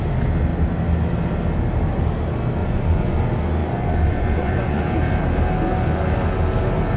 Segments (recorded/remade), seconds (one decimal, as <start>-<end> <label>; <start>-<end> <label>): 0.0-2.6 recorded; 2.6-3.2 remade; 3.2-3.6 recorded; 3.6-4.8 remade; 4.8-7.0 recorded